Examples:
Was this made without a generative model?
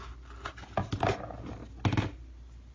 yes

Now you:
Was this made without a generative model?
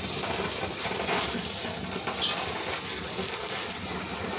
yes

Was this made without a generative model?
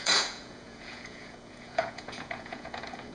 no